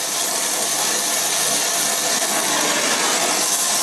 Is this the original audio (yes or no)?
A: yes